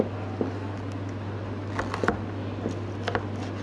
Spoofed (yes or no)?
no